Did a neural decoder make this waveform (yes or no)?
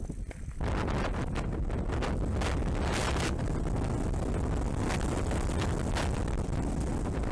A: no